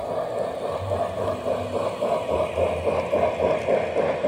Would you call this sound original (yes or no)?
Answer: yes